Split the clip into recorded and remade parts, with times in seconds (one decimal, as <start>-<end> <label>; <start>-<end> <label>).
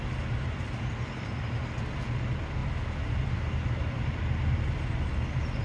0.0-5.6 recorded